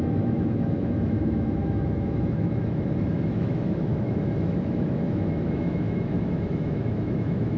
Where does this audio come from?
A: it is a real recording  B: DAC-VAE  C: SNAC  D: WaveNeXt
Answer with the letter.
B